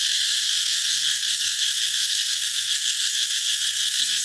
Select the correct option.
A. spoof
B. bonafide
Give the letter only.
A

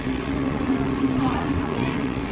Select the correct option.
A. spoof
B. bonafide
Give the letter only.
A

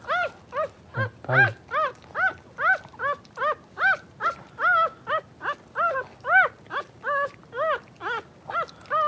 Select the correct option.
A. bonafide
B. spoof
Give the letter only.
A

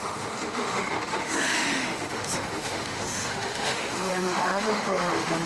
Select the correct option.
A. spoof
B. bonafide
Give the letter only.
A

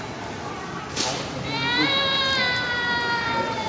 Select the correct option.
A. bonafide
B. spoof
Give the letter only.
A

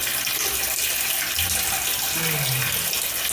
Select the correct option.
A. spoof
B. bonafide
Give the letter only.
B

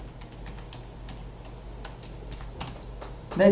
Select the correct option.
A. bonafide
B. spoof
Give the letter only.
A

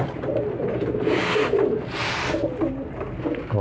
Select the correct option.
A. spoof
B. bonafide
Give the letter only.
B